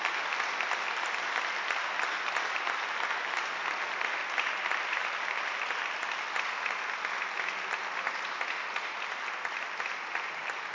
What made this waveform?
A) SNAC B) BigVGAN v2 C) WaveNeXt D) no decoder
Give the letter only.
D